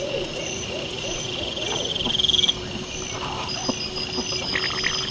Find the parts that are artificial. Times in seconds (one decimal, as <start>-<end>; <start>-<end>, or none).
0.0-1.9